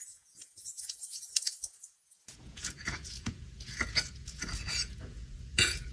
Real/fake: fake